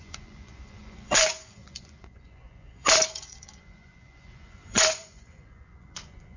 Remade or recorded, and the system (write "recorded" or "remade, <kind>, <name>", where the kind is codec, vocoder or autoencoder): remade, vocoder, Vocos